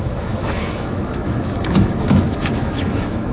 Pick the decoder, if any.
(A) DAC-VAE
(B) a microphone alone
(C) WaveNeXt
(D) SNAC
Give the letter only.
A